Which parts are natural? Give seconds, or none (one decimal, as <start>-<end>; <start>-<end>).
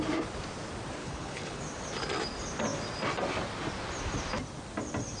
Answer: 0.0-1.0; 1.6-5.2